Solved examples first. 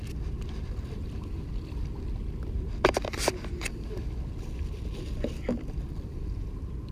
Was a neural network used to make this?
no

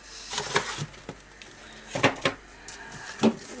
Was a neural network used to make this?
no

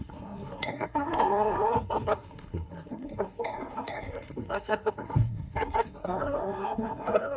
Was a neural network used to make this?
yes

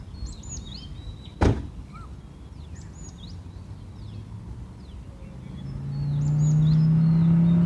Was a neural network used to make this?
no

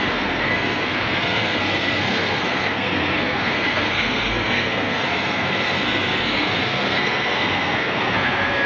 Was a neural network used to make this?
yes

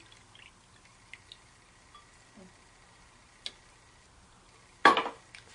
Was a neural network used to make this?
no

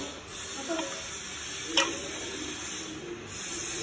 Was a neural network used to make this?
no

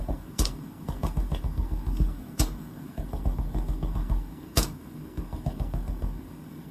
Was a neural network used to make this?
yes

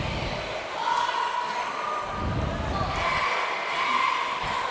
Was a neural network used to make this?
no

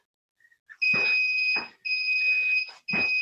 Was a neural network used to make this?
no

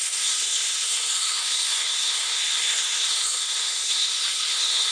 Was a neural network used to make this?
yes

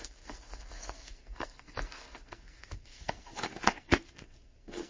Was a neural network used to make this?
yes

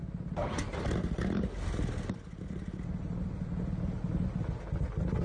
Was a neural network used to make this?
no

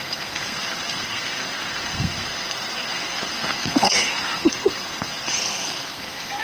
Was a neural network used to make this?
yes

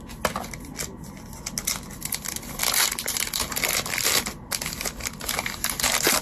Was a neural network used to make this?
no